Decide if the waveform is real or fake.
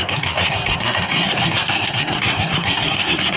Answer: fake